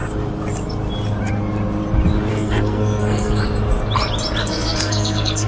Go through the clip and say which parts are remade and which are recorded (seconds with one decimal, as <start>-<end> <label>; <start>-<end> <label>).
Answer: 0.0-2.3 recorded; 2.3-3.4 remade; 3.4-4.4 recorded; 4.4-5.5 remade